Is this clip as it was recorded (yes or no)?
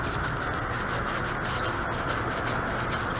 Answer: yes